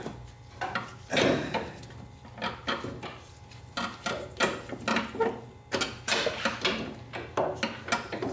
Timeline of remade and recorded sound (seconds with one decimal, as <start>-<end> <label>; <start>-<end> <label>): 0.0-8.3 recorded